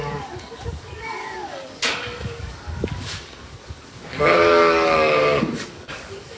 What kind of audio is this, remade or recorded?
remade